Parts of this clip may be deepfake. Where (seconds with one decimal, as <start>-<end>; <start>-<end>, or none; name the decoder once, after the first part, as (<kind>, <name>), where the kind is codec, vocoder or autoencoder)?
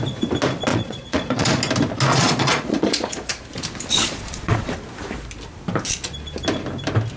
0.7-1.6 (vocoder, Vocos); 2.1-3.3; 3.9-4.7